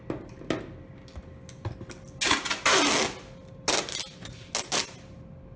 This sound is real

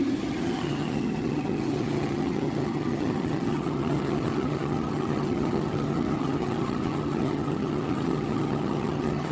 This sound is fake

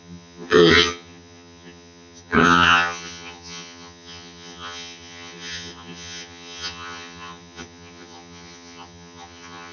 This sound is fake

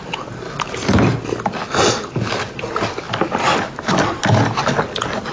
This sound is real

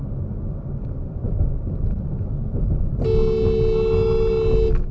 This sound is real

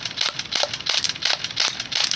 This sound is real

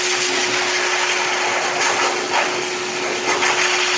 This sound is real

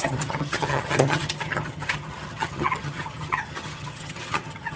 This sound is fake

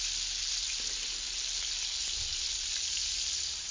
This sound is real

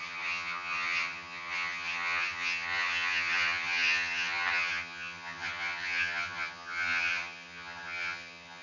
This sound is fake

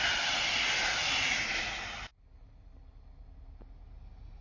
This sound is real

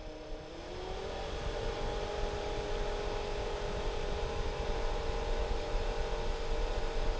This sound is real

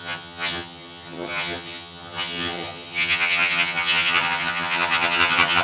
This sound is fake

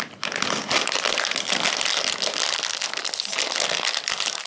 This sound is real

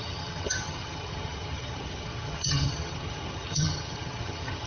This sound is fake